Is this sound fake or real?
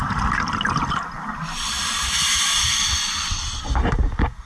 real